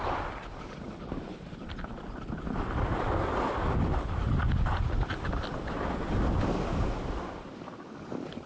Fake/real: fake